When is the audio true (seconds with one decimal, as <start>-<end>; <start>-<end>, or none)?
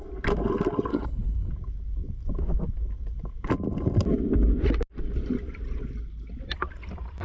0.0-0.9; 1.5-7.2